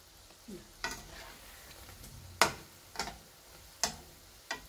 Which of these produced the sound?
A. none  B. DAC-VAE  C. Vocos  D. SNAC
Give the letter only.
A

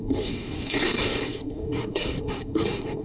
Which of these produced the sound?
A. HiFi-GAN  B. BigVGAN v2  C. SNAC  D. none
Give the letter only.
C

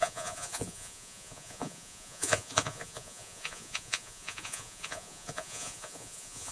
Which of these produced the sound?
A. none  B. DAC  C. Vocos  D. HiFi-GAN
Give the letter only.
C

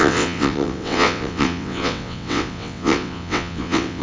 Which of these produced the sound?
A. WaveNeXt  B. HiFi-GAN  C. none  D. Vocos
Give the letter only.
A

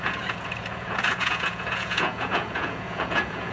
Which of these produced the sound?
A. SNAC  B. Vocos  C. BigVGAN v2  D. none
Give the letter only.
B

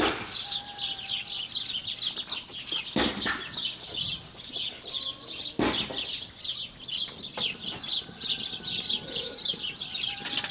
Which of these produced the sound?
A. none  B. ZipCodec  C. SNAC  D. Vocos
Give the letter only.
A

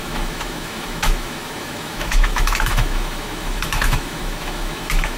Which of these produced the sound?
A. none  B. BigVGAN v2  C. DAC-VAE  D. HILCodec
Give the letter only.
C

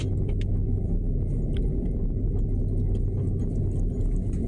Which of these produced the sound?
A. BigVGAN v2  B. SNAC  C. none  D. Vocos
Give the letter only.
C